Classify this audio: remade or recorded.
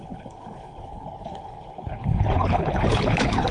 remade